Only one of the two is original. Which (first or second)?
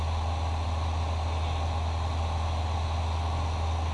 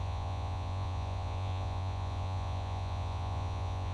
first